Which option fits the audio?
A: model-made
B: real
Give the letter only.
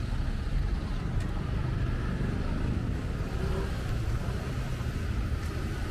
B